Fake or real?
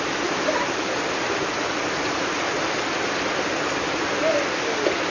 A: real